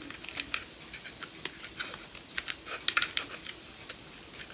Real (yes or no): yes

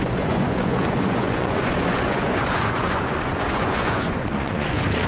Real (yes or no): no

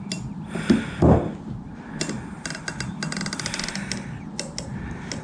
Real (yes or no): yes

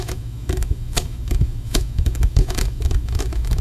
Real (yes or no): no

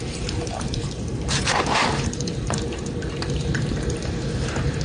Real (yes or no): no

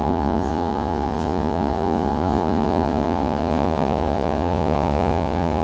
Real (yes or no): no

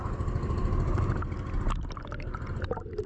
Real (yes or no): yes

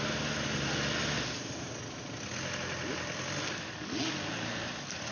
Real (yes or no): yes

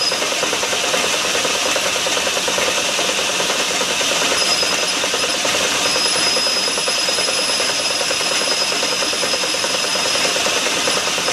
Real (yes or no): no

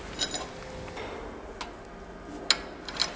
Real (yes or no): yes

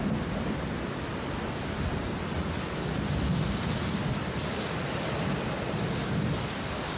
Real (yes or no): yes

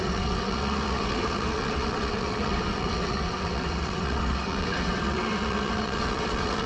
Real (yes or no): no